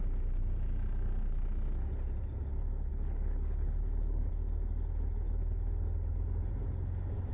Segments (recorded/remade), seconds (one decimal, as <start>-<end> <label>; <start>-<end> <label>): 0.0-2.9 recorded; 2.9-4.3 remade; 4.3-7.3 recorded